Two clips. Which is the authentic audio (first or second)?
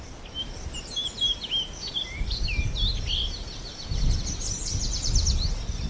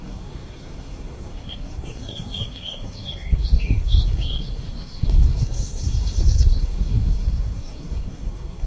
first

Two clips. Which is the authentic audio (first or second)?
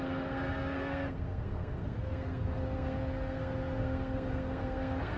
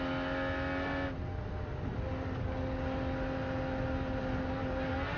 second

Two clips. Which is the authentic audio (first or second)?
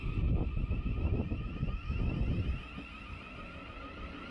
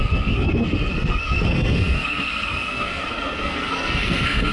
first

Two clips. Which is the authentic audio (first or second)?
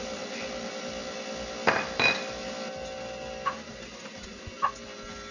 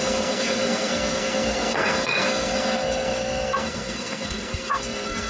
first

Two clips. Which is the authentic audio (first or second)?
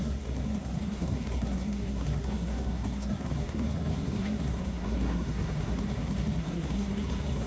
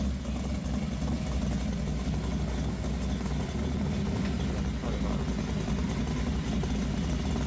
second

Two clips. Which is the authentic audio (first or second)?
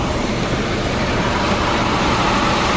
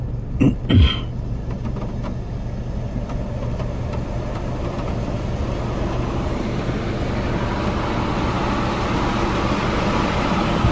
second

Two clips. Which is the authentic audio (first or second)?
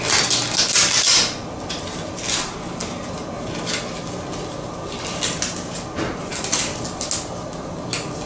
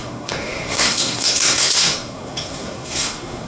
first